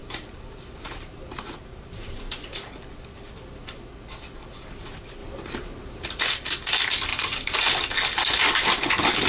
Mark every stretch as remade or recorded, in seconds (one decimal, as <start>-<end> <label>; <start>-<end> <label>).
0.0-2.7 remade; 2.7-5.2 recorded; 5.2-6.2 remade; 6.2-7.1 recorded; 7.1-7.7 remade; 7.7-9.3 recorded